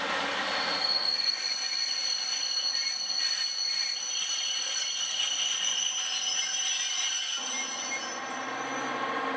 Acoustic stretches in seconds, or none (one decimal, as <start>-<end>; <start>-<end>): 0.0-0.8; 1.4-9.4